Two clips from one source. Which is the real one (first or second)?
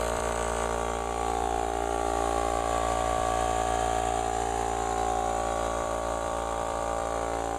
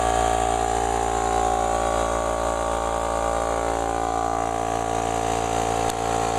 second